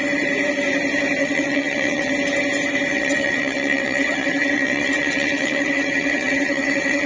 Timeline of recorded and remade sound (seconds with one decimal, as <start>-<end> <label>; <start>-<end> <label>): 0.0-1.2 recorded; 1.2-2.1 remade; 2.1-2.9 recorded; 2.9-7.1 remade